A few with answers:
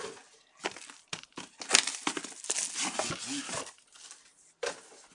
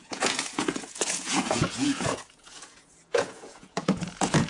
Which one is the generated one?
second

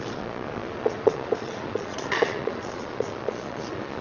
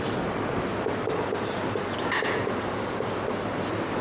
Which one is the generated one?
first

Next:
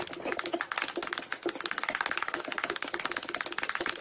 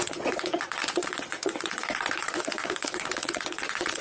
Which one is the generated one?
second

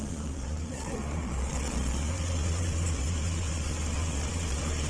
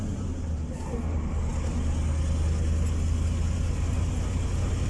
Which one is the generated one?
first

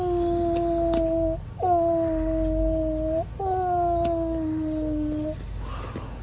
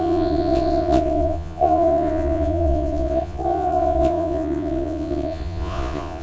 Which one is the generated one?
second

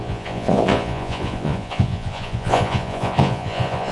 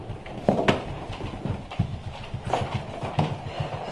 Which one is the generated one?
first